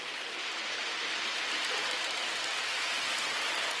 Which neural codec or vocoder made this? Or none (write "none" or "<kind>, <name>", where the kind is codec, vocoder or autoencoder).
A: none